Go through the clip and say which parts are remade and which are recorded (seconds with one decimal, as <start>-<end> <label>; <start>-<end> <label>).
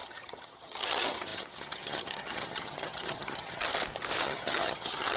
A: 0.0-3.7 remade; 3.7-4.2 recorded; 4.2-5.2 remade